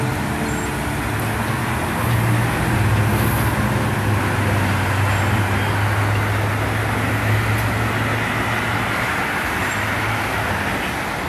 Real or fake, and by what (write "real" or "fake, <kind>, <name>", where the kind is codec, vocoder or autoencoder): real